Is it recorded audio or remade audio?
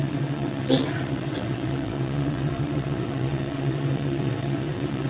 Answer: remade